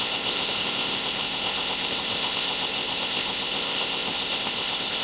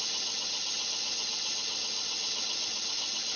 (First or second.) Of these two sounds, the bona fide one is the second